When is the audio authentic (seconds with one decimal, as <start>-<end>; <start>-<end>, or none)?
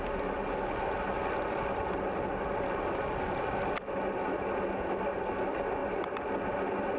0.0-7.0